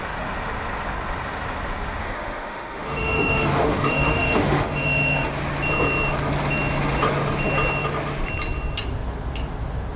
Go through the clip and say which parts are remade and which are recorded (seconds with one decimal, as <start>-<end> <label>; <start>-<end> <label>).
0.0-2.0 recorded; 2.0-5.3 remade; 5.3-10.0 recorded